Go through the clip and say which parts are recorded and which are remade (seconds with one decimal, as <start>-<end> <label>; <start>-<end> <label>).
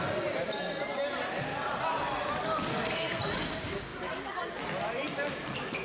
0.0-2.7 recorded; 2.7-3.2 remade; 3.2-5.8 recorded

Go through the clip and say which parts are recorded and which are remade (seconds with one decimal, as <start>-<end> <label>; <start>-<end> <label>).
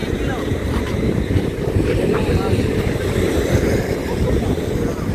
0.0-3.1 remade; 3.1-4.0 recorded; 4.0-4.6 remade; 4.6-5.1 recorded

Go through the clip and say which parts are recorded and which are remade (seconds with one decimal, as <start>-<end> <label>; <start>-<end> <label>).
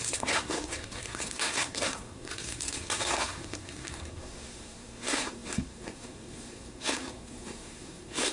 0.0-8.3 remade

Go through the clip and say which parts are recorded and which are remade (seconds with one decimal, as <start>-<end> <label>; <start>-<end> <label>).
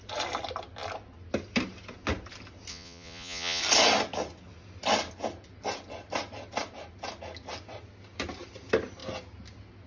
0.0-2.7 recorded; 2.7-3.6 remade; 3.6-9.9 recorded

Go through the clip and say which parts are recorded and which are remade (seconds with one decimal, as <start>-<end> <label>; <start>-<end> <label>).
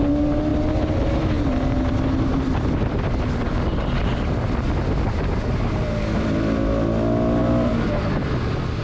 0.0-7.4 recorded; 7.4-8.0 remade; 8.0-8.8 recorded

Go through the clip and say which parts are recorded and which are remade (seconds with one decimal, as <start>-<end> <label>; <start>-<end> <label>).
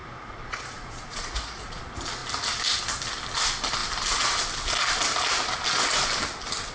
0.0-1.8 remade; 1.8-6.7 recorded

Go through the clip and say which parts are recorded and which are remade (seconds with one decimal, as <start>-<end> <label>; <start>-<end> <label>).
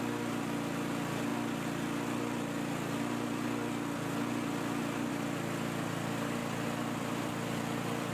0.0-6.4 recorded; 6.4-8.1 remade